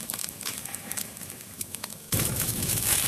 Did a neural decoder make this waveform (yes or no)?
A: yes